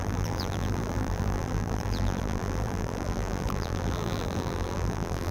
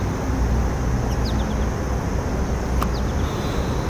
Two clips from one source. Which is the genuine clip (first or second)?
second